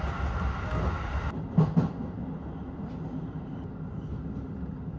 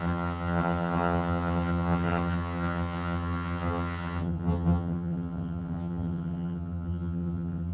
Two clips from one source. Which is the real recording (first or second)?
first